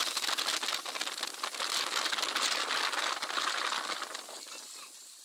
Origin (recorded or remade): recorded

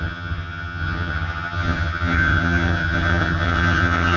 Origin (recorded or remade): remade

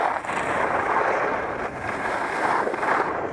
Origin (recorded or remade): recorded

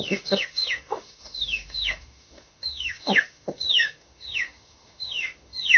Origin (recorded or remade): remade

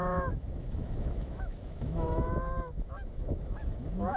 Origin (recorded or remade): remade